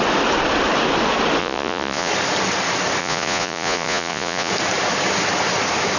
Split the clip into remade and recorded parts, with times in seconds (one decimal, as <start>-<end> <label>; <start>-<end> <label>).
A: 0.0-1.4 recorded; 1.4-2.1 remade; 2.1-3.0 recorded; 3.0-4.5 remade; 4.5-6.0 recorded